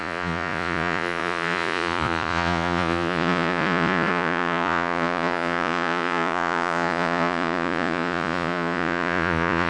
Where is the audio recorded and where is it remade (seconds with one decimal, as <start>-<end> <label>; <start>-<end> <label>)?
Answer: 0.0-9.7 remade